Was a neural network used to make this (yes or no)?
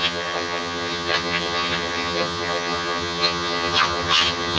yes